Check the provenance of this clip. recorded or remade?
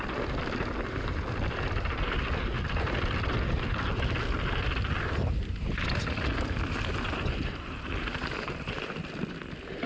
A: recorded